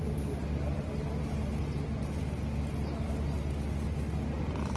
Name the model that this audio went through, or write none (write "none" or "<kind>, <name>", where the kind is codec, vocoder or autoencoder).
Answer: none